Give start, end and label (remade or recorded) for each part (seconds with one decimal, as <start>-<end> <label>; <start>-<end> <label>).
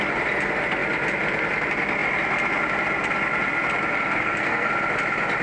0.0-4.2 recorded; 4.2-4.7 remade; 4.7-5.4 recorded